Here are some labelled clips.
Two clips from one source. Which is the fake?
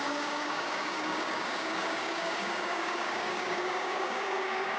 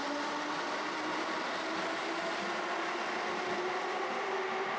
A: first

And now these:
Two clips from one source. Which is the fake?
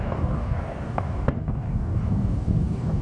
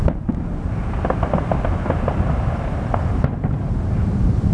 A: first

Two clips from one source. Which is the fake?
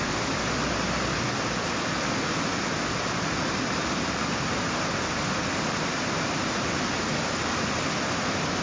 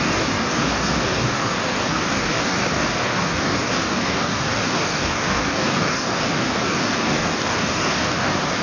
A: second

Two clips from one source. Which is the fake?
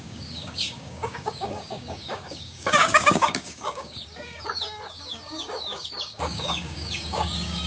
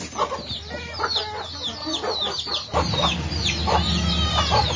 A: first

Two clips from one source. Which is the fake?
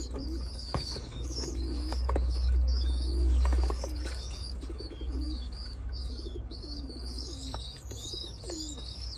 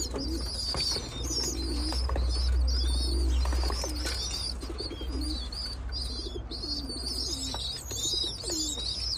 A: first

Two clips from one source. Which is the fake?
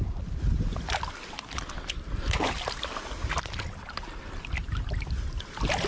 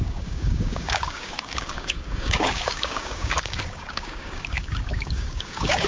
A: second